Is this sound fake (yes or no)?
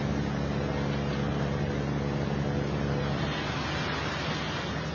no